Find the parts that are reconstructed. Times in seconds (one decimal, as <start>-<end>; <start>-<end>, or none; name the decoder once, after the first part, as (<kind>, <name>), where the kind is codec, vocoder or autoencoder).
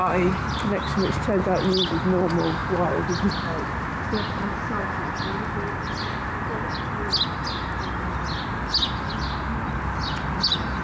none